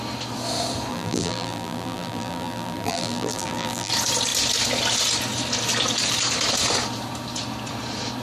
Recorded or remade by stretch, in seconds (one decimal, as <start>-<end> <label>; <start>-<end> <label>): 0.0-0.9 recorded; 0.9-3.9 remade; 3.9-8.2 recorded